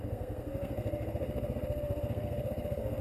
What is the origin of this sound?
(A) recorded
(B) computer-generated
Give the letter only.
B